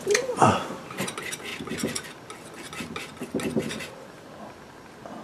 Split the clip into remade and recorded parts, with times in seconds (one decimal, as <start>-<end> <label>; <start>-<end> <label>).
0.0-5.2 recorded